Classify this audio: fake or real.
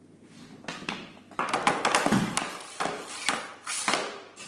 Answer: real